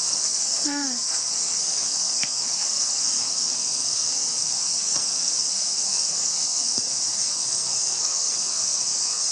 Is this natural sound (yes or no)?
no